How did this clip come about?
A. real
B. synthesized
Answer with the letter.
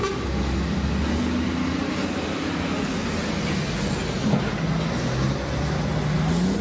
A